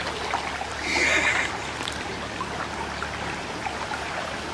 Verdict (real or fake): real